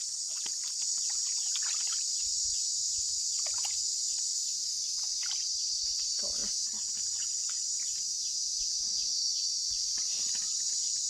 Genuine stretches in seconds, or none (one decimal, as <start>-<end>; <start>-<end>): 0.0-4.0; 5.7-11.1